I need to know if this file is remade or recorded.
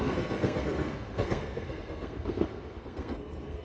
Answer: remade